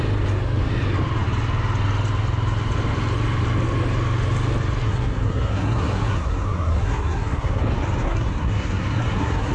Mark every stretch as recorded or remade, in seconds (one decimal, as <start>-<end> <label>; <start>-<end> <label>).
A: 0.0-4.8 recorded; 4.8-7.6 remade; 7.6-8.0 recorded; 8.0-9.5 remade